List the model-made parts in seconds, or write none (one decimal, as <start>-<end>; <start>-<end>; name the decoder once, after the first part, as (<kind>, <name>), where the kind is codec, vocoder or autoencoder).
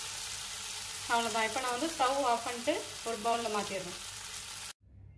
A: 3.2-4.5 (vocoder, BigVGAN v2)